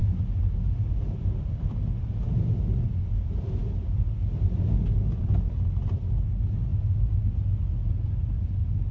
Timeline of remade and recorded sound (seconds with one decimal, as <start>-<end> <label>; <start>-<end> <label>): 0.0-8.9 recorded